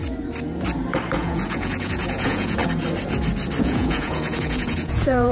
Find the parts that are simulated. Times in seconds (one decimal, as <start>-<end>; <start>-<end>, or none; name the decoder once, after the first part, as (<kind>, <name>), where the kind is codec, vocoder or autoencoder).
1.2-2.6 (vocoder, Vocos); 3.6-5.3